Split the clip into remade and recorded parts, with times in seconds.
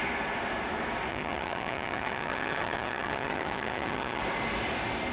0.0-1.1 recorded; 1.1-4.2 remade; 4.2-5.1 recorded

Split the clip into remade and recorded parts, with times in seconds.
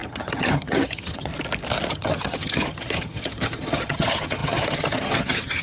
0.0-1.3 remade; 1.3-1.9 recorded; 1.9-5.6 remade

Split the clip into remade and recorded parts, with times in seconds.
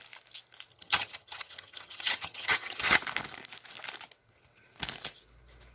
0.0-0.7 recorded; 0.7-3.0 remade; 3.0-5.7 recorded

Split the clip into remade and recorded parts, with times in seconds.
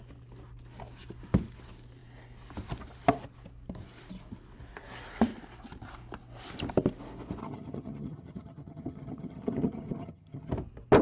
0.0-7.4 recorded; 7.4-10.5 remade; 10.5-11.0 recorded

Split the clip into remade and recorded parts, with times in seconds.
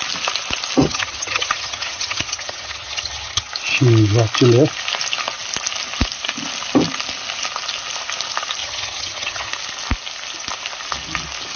0.0-0.8 recorded; 0.8-3.5 remade; 3.5-8.6 recorded; 8.6-9.5 remade; 9.5-11.6 recorded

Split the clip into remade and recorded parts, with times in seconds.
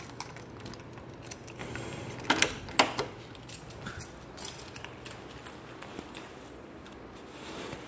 0.0-7.9 recorded